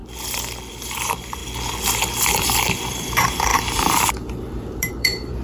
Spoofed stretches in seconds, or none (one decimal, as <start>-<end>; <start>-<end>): 0.7-1.4; 2.9-5.4